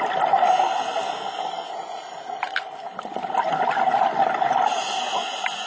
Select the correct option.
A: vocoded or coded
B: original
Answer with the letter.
B